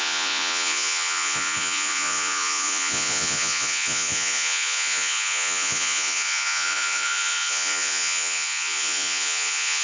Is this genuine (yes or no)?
no